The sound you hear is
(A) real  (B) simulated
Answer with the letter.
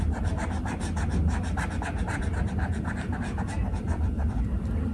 B